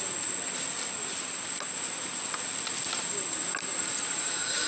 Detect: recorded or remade recorded